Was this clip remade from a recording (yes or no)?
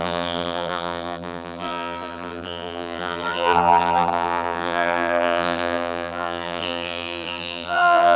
yes